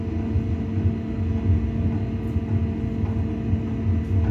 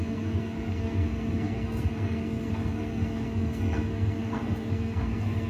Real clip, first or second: first